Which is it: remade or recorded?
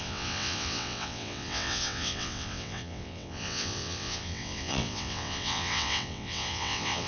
remade